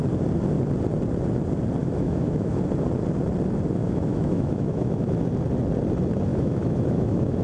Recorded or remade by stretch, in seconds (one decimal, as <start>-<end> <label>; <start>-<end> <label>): 0.0-1.8 recorded; 1.8-2.6 remade; 2.6-3.8 recorded; 3.8-5.1 remade; 5.1-6.3 recorded; 6.3-7.4 remade